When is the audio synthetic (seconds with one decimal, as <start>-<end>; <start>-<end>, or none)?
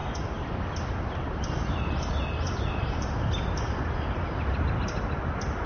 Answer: none